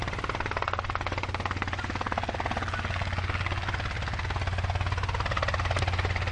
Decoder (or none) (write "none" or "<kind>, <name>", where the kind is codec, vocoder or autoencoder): none